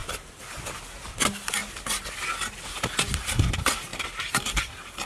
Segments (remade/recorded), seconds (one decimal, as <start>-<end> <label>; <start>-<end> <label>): 0.0-3.9 recorded; 3.9-4.5 remade; 4.5-5.1 recorded